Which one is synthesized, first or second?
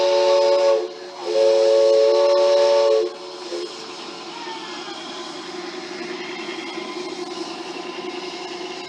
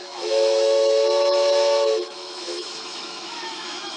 second